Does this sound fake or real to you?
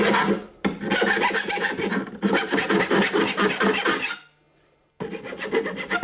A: real